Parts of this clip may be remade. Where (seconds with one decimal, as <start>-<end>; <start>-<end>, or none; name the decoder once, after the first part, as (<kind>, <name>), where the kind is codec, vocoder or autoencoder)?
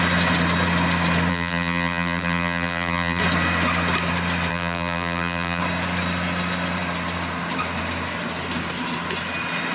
1.3-3.2 (vocoder, BigVGAN v2); 4.5-5.6